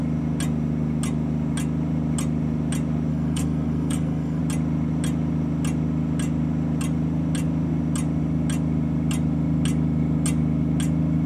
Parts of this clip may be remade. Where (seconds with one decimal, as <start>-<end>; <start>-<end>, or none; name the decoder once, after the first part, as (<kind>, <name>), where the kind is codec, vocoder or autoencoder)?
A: 3.1-4.4 (codec, SNAC)